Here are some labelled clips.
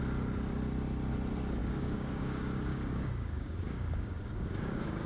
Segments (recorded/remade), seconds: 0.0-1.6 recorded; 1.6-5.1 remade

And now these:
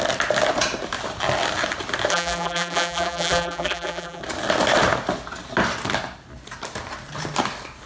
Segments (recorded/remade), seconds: 0.0-2.1 recorded; 2.1-4.2 remade; 4.2-7.9 recorded